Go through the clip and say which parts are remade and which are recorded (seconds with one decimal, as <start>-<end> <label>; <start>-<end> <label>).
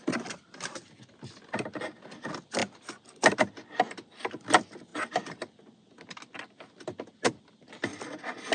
0.0-8.5 recorded